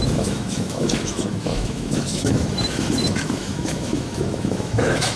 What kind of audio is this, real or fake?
fake